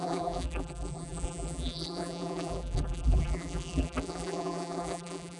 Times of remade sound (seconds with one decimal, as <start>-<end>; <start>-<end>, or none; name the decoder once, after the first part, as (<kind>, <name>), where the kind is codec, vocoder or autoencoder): 0.0-5.4 (vocoder, BigVGAN v2)